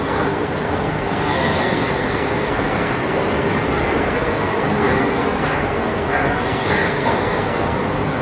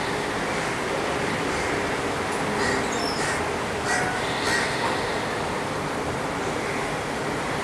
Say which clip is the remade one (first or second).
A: first